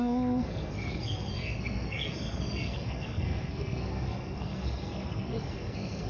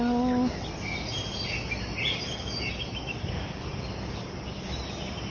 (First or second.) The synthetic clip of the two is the first